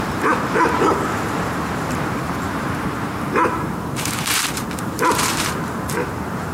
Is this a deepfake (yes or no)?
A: yes